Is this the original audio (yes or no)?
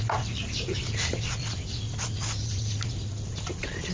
yes